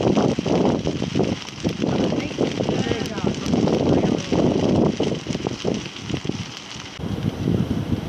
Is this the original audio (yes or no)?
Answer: yes